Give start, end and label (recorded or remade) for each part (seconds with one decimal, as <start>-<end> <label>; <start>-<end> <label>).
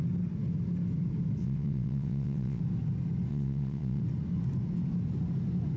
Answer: 0.0-1.4 recorded; 1.4-2.6 remade; 2.6-3.3 recorded; 3.3-4.0 remade; 4.0-5.8 recorded